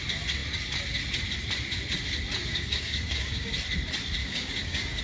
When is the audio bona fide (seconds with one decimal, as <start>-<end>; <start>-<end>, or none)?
0.0-2.4; 3.5-4.2